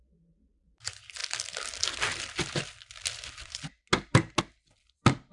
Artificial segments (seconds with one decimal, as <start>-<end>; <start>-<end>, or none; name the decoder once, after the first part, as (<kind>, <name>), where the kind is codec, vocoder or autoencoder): none